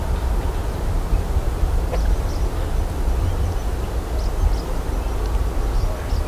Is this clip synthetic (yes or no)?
no